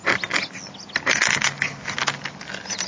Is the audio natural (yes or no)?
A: yes